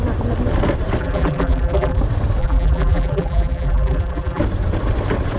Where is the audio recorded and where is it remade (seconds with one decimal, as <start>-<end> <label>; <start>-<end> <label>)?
0.0-1.0 recorded; 1.0-2.0 remade; 2.0-2.4 recorded; 2.4-4.4 remade; 4.4-5.4 recorded